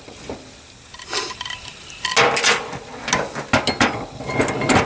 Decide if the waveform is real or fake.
real